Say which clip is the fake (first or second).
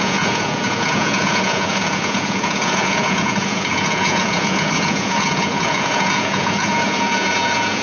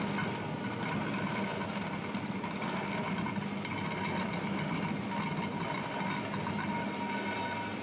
first